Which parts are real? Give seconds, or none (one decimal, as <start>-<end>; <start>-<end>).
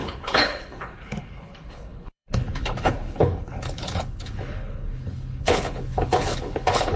none